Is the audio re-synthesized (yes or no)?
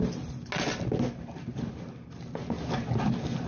no